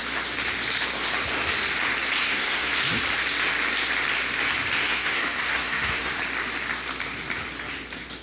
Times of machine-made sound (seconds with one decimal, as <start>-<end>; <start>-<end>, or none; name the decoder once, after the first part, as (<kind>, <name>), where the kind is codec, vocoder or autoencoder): 2.2-2.7 (codec, SNAC); 4.8-6.1